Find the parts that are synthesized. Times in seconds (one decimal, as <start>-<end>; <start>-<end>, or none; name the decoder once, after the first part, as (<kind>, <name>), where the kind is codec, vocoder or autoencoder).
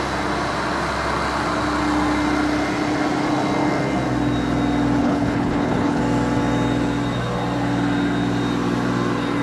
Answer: 5.0-6.0 (codec, HILCodec)